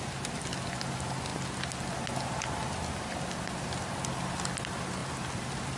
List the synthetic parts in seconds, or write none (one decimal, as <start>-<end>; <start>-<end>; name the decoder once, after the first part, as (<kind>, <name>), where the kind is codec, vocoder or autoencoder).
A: none